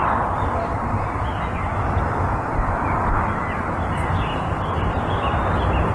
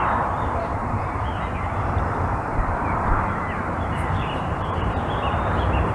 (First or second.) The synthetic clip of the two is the second